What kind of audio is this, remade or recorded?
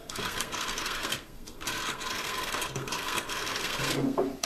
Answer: remade